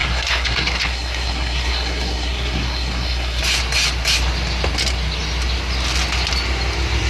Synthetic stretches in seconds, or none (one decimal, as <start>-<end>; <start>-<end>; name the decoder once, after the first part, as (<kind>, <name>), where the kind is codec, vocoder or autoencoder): 0.0-3.4 (codec, SNAC)